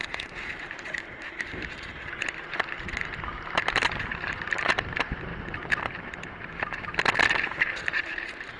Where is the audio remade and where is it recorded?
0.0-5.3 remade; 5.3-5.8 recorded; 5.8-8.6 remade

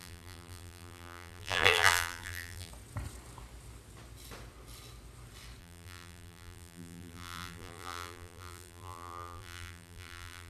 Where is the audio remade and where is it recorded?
0.0-2.7 remade; 2.7-5.6 recorded; 5.6-10.5 remade

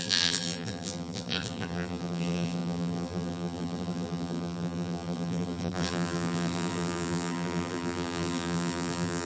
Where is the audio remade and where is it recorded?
0.0-9.2 remade